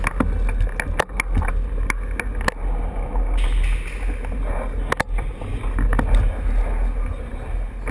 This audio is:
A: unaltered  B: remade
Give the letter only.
A